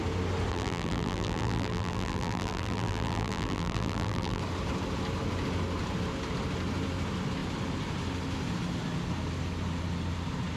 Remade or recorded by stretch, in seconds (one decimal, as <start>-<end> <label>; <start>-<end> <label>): 0.0-0.5 recorded; 0.5-4.4 remade; 4.4-10.6 recorded